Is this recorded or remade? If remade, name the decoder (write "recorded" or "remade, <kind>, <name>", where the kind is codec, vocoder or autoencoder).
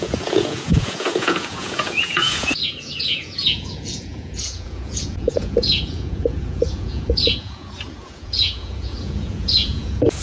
remade, vocoder, Vocos